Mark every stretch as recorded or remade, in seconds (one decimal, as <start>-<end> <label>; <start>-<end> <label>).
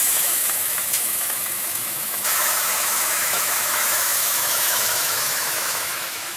0.0-6.4 remade